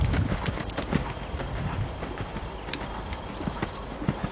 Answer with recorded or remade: recorded